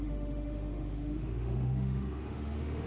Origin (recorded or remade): remade